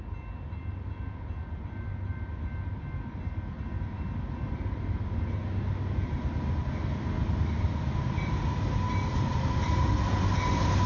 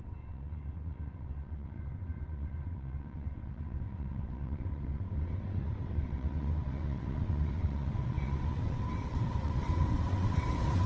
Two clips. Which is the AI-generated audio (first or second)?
second